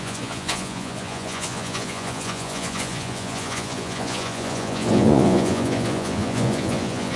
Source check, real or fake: fake